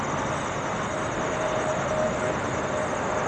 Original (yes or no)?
yes